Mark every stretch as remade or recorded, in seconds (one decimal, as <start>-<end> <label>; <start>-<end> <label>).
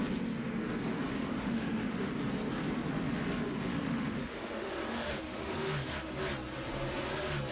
0.0-1.1 recorded; 1.1-2.1 remade; 2.1-3.7 recorded; 3.7-6.1 remade; 6.1-7.5 recorded